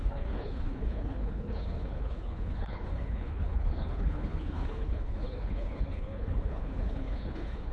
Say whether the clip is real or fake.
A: fake